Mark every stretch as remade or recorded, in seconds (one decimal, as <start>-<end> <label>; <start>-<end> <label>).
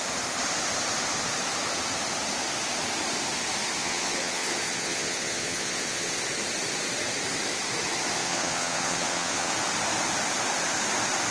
0.0-3.8 recorded; 3.8-6.2 remade; 6.2-8.2 recorded; 8.2-9.5 remade; 9.5-11.3 recorded